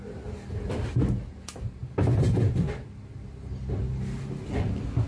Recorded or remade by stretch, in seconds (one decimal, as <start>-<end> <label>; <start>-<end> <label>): 0.0-5.1 recorded